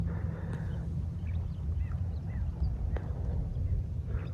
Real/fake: real